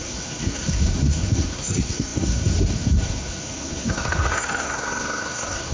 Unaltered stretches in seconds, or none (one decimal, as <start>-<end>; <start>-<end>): none